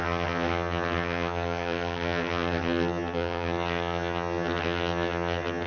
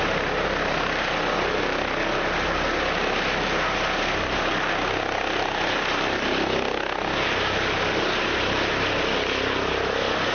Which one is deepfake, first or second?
first